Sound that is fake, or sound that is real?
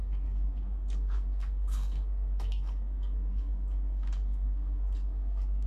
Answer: fake